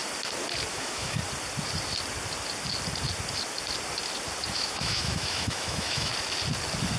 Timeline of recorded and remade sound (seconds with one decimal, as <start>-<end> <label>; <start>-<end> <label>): 0.0-0.7 recorded; 0.7-1.2 remade; 1.2-4.5 recorded; 4.5-6.1 remade; 6.1-7.0 recorded